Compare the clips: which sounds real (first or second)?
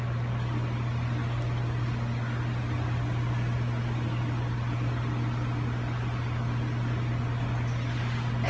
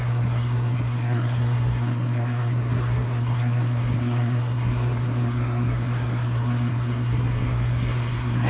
first